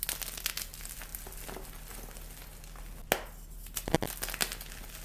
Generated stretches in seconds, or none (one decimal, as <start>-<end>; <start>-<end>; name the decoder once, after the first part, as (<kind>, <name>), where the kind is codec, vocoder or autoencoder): none